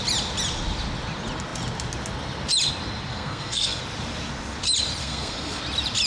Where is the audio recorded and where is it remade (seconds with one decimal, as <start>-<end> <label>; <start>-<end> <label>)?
0.0-3.1 recorded; 3.1-3.8 remade; 3.8-5.0 recorded; 5.0-5.6 remade; 5.6-6.1 recorded